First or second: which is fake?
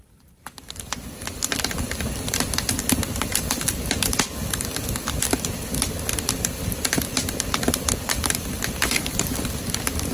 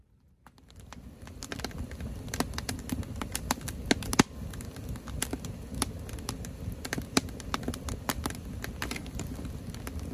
first